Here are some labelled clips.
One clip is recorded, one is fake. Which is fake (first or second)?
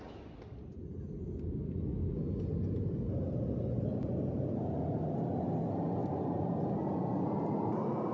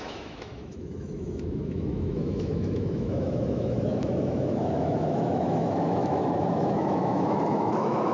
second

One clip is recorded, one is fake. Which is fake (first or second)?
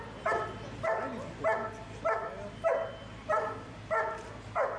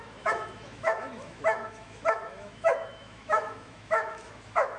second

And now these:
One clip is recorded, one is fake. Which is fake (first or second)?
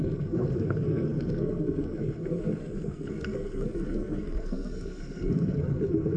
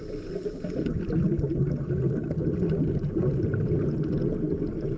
first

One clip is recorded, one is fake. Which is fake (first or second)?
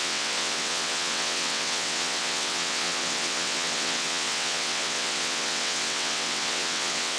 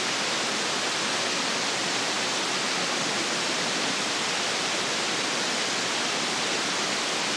first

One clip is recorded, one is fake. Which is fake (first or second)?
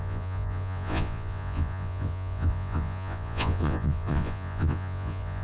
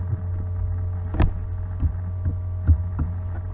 first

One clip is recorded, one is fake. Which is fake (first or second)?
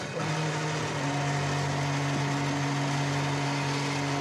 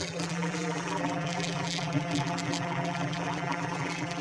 second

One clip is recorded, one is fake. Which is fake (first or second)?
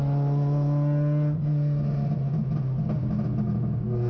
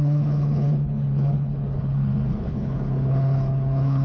second